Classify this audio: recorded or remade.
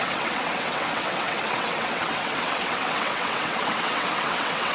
remade